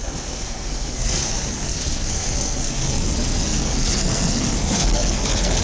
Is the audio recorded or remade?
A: remade